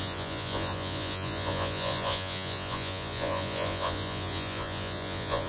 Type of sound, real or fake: fake